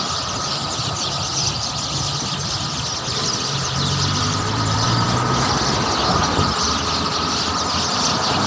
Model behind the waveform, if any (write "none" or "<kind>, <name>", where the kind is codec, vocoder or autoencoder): vocoder, BigVGAN v2